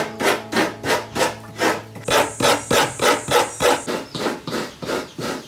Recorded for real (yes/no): yes